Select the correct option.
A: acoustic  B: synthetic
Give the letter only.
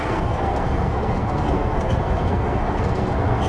B